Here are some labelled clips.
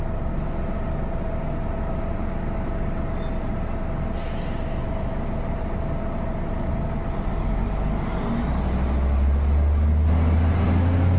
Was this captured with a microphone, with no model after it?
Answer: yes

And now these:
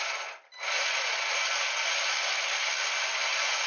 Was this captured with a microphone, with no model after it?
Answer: yes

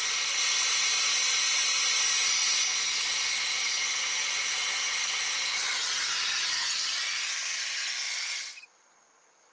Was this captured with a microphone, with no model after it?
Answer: yes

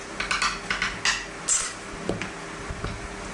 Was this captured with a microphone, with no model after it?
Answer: yes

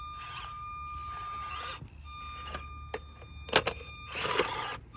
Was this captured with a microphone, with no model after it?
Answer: yes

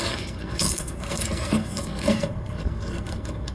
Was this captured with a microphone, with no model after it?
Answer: no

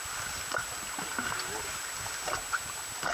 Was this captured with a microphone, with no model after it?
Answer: yes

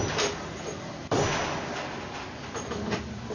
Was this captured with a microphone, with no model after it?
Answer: yes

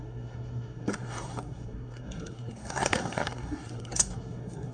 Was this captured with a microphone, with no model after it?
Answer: no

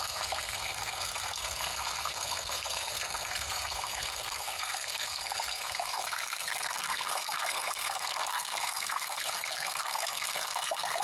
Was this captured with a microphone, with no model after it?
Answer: no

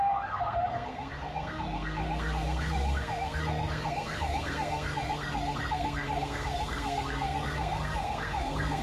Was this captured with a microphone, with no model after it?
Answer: no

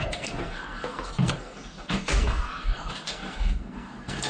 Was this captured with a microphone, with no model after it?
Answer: no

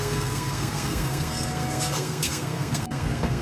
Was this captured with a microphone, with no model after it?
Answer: no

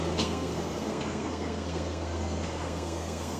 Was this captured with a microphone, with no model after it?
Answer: no